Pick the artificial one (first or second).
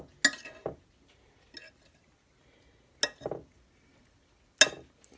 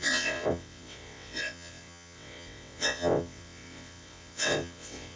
second